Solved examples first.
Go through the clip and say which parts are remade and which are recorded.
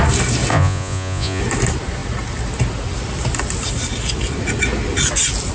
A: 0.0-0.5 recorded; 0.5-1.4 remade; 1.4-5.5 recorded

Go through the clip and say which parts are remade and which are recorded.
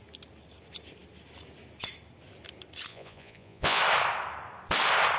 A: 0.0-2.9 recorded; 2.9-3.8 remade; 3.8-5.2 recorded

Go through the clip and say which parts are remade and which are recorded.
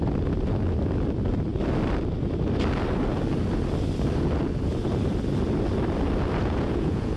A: 0.0-6.4 recorded; 6.4-7.2 remade